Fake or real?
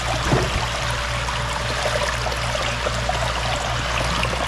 real